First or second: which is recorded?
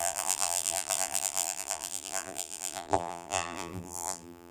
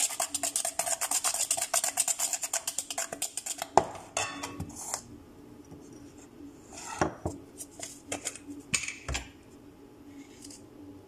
second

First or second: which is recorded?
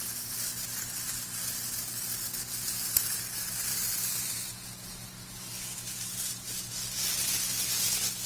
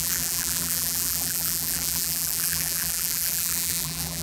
first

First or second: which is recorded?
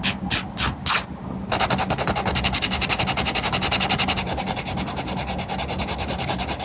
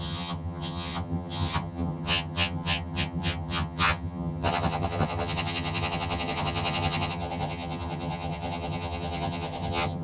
first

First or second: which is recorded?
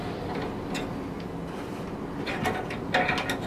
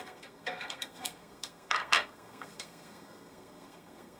first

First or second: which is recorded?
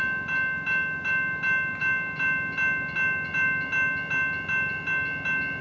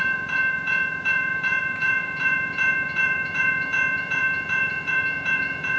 first